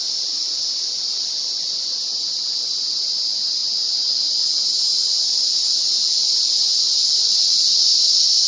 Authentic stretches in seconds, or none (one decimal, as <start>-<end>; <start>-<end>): 0.0-8.5